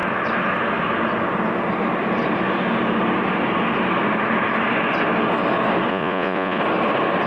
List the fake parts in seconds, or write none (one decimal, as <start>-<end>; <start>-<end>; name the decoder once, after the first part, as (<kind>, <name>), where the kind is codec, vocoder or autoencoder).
5.9-6.6 (vocoder, Vocos)